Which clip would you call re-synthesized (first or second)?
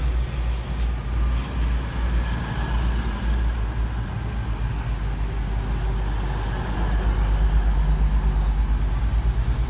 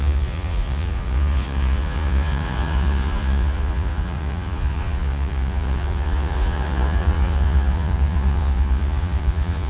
second